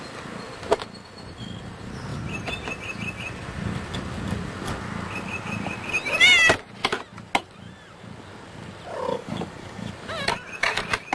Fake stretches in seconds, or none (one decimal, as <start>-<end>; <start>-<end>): 9.1-9.9